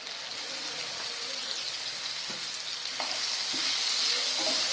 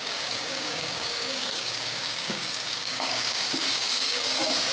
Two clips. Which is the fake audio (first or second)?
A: second